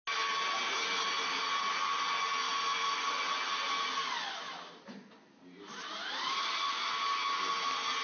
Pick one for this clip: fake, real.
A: real